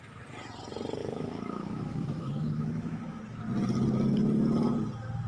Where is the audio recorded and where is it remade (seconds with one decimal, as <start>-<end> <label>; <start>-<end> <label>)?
0.0-1.0 recorded; 1.0-3.2 remade; 3.2-5.3 recorded